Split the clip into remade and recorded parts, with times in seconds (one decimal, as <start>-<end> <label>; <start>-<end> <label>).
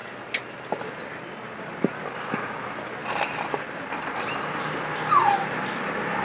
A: 0.0-6.2 recorded